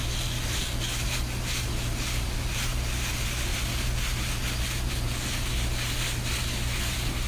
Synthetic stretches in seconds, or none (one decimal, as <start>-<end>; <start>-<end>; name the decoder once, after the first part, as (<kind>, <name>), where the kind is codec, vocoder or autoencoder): none